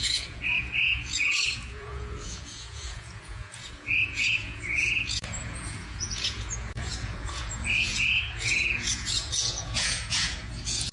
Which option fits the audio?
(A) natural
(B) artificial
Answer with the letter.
B